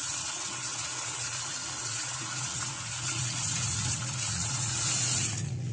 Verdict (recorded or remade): remade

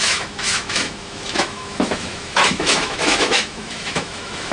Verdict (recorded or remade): remade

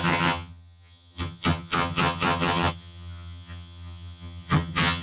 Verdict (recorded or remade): remade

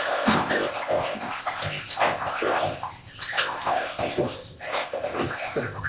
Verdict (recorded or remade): remade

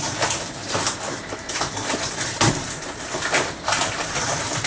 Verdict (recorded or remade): remade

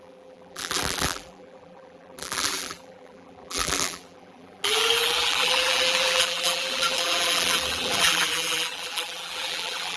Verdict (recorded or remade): remade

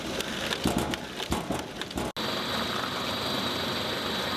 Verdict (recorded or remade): recorded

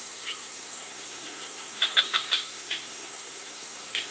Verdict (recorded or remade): remade